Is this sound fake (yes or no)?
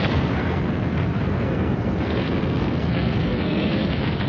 yes